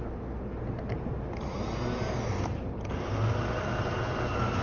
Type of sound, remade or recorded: recorded